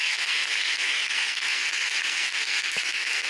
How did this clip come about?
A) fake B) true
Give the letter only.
A